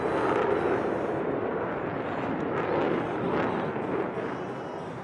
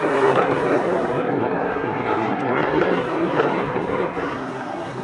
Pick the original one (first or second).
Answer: first